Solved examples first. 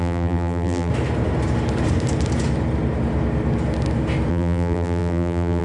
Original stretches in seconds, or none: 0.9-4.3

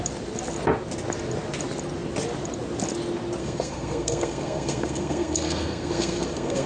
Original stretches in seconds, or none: 0.0-3.4

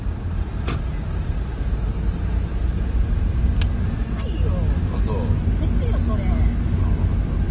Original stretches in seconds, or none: 0.0-7.5